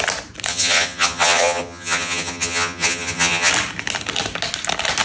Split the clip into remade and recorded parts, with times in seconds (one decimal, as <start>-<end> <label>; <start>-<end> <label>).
0.0-0.5 recorded; 0.5-3.5 remade; 3.5-5.0 recorded